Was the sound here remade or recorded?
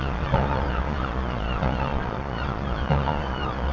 remade